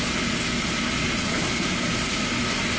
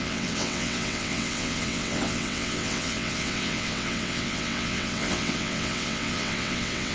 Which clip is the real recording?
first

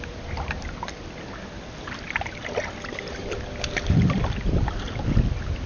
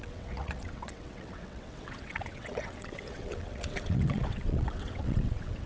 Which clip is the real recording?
first